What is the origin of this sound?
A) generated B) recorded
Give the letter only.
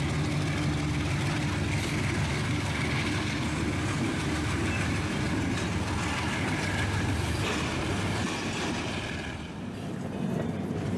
B